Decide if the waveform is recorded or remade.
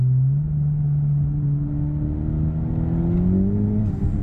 recorded